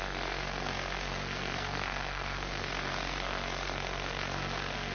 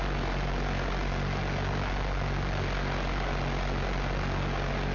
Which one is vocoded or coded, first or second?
first